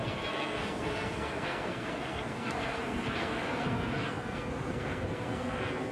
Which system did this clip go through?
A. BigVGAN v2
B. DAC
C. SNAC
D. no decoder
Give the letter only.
C